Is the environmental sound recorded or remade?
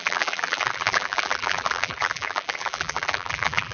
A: remade